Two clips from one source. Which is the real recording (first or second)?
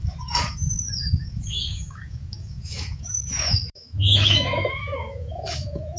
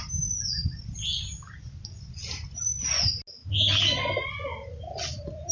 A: second